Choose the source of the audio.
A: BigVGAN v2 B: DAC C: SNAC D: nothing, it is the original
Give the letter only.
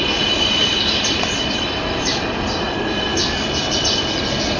A